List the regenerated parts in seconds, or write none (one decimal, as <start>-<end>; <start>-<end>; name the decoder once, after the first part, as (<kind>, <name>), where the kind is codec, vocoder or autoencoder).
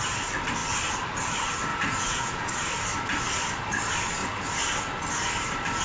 1.7-2.5 (vocoder, Vocos)